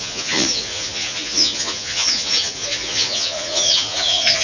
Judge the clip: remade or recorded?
remade